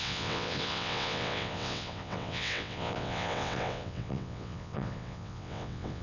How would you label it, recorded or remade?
remade